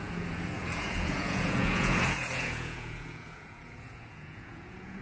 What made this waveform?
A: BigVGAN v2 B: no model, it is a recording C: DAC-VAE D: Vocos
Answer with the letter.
D